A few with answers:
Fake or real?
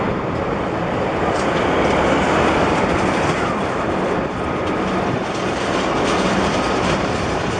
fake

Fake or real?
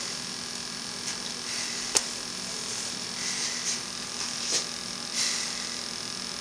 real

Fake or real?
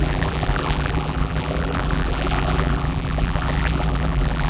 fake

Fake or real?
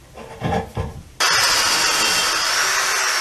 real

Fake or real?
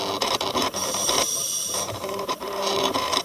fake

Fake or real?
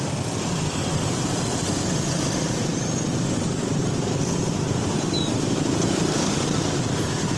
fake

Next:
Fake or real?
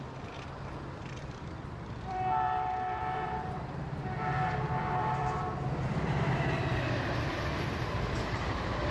fake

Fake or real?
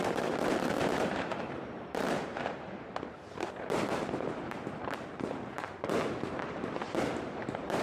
fake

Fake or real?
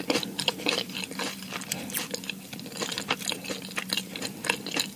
real